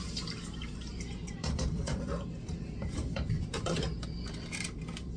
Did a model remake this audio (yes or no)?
yes